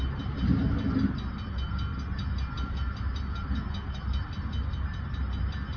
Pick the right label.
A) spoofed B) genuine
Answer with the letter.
B